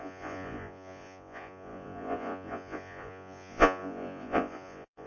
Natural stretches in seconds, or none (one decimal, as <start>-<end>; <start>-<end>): none